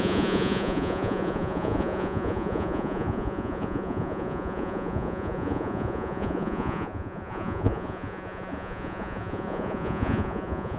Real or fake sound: fake